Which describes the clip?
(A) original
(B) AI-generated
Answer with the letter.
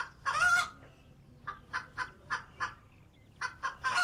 A